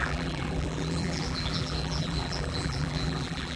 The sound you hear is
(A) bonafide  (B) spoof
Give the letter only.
B